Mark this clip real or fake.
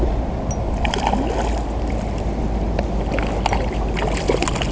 real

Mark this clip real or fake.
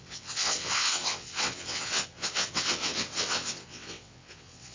fake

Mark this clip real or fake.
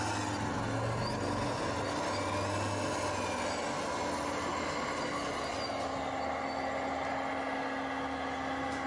real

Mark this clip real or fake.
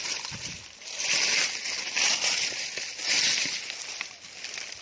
real